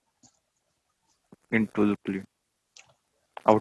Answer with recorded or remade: recorded